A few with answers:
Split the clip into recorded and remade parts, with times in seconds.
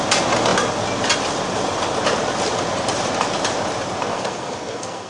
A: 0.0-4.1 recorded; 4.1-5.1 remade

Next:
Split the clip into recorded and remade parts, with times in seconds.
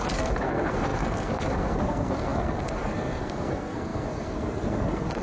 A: 0.0-5.2 remade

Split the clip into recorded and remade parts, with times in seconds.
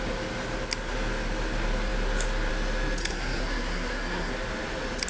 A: 0.0-3.0 recorded; 3.0-4.3 remade; 4.3-5.1 recorded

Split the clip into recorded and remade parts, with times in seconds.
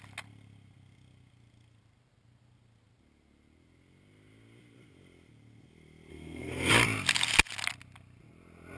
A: 0.0-6.1 recorded; 6.1-6.7 remade; 6.7-8.8 recorded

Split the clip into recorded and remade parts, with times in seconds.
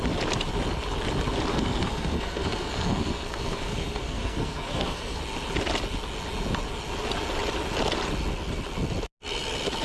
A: 0.0-1.5 recorded; 1.5-5.2 remade; 5.2-9.8 recorded